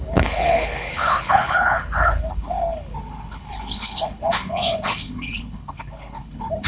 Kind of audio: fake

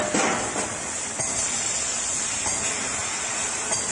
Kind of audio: real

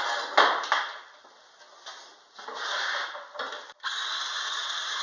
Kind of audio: real